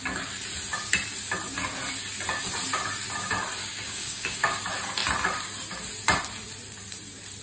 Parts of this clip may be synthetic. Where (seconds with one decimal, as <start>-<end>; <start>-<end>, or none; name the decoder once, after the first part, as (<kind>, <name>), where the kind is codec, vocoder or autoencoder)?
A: 3.6-4.6 (codec, DAC)